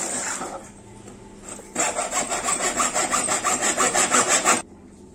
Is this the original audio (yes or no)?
yes